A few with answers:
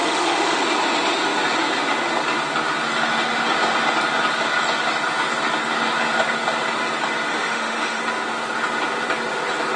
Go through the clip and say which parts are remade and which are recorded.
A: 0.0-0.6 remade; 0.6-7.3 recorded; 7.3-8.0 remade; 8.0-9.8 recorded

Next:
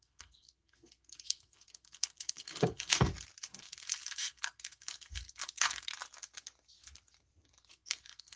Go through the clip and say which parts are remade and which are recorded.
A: 0.0-3.1 remade; 3.1-3.6 recorded; 3.6-5.9 remade; 5.9-7.7 recorded; 7.7-8.4 remade

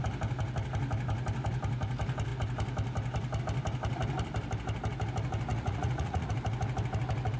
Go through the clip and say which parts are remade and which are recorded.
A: 0.0-5.5 recorded; 5.5-6.3 remade; 6.3-7.4 recorded

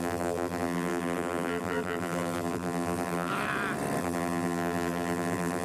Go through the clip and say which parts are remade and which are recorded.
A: 0.0-3.3 remade; 3.3-4.0 recorded; 4.0-5.6 remade

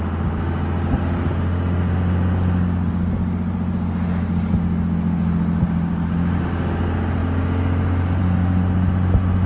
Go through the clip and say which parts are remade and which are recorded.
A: 0.0-9.5 recorded

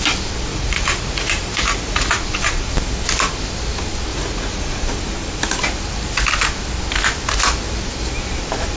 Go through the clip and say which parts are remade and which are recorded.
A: 0.0-0.5 recorded; 0.5-2.7 remade; 2.7-4.1 recorded; 4.1-4.9 remade; 4.9-8.8 recorded

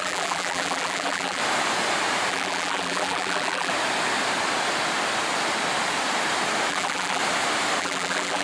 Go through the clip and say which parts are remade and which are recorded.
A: 0.0-1.4 remade; 1.4-2.3 recorded; 2.3-3.7 remade; 3.7-6.7 recorded; 6.7-7.2 remade; 7.2-7.8 recorded; 7.8-8.4 remade